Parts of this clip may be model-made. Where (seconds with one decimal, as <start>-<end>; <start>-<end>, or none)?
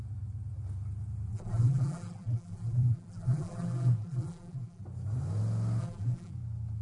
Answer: 1.3-4.8; 5.8-6.3